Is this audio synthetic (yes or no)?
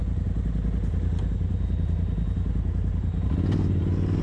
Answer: no